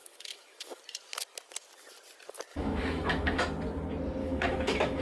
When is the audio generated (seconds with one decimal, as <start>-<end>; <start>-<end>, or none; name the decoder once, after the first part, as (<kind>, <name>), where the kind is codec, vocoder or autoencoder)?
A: 0.0-0.8 (autoencoder, DAC-VAE); 2.5-3.4; 4.2-5.0